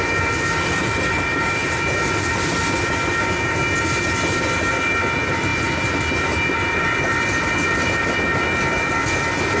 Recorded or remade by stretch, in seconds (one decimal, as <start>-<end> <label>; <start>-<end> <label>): 0.0-9.6 recorded